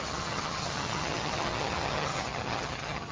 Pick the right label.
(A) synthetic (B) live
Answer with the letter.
A